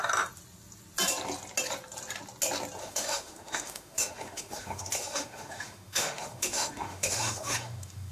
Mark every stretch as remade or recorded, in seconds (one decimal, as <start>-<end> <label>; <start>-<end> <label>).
0.0-2.8 recorded; 2.8-8.1 remade

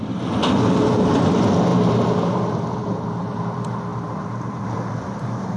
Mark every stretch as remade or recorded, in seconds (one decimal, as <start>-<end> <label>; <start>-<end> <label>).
0.0-5.6 recorded

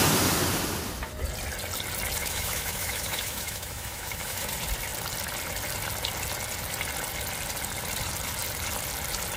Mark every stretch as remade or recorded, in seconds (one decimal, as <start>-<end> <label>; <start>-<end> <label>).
0.0-2.2 recorded; 2.2-4.5 remade; 4.5-9.4 recorded

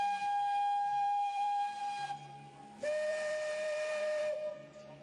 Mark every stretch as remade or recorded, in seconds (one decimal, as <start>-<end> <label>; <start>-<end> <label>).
0.0-0.9 recorded; 0.9-1.8 remade; 1.8-3.1 recorded; 3.1-4.2 remade; 4.2-5.0 recorded

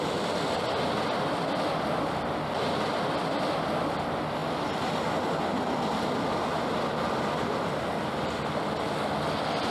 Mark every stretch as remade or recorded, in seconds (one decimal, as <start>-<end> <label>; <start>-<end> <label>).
0.0-9.7 recorded

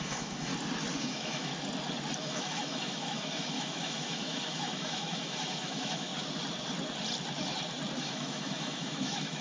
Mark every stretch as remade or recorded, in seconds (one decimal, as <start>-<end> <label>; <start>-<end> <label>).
0.0-0.5 remade; 0.5-1.0 recorded; 1.0-1.5 remade; 1.5-2.2 recorded; 2.2-6.1 remade; 6.1-8.0 recorded; 8.0-9.4 remade

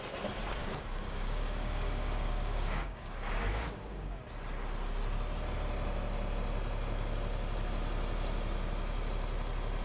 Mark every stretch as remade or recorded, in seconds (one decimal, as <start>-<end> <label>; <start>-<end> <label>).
0.0-0.6 recorded; 0.6-4.2 remade; 4.2-9.8 recorded